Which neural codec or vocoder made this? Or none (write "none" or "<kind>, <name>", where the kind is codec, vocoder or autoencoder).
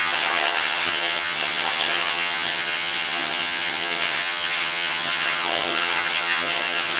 vocoder, HiFi-GAN